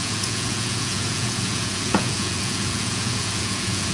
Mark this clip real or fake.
fake